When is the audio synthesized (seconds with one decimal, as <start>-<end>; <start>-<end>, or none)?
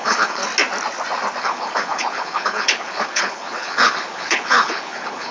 0.0-0.4; 1.4-5.3